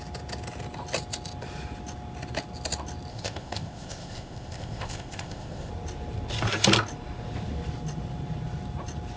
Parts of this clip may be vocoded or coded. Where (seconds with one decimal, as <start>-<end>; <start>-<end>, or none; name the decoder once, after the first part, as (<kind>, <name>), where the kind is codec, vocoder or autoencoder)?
3.1-5.7 (codec, ZipCodec)